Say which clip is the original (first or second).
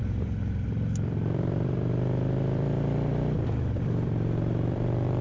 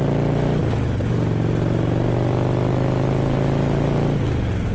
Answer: second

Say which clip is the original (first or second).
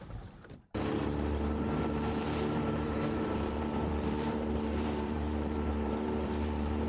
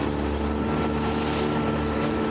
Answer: second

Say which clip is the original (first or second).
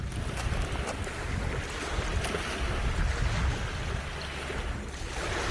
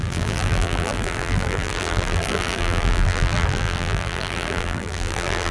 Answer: first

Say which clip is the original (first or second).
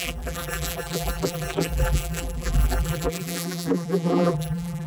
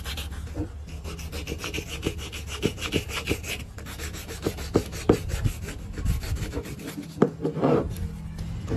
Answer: second